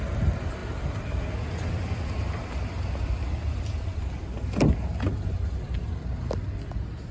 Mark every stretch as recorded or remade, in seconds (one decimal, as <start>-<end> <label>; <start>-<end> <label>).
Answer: 0.0-7.1 recorded